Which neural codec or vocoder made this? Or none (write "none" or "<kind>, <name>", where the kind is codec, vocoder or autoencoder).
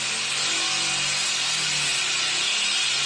none